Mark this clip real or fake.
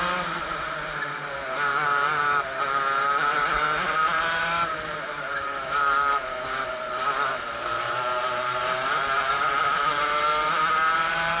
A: fake